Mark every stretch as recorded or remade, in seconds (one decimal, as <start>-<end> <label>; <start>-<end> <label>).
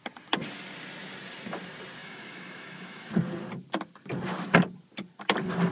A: 0.0-2.0 recorded; 2.0-3.1 remade; 3.1-5.7 recorded